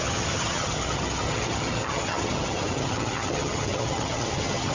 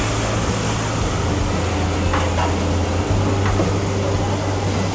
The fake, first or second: first